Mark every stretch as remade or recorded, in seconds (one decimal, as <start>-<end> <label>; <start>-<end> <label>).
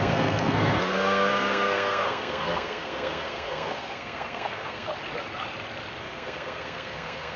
0.0-4.9 remade; 4.9-6.0 recorded; 6.0-7.4 remade